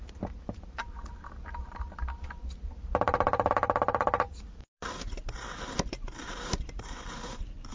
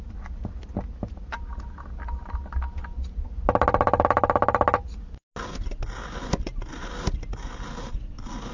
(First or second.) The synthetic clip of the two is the first